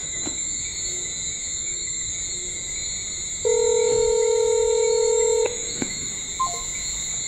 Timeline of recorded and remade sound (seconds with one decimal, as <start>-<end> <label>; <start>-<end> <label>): 0.0-0.6 remade; 0.6-1.5 recorded; 1.5-2.1 remade; 2.1-3.9 recorded; 3.9-6.1 remade; 6.1-7.3 recorded